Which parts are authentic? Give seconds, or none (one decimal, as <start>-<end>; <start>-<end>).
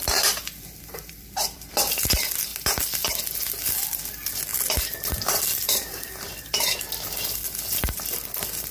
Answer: 1.7-4.5; 6.8-8.7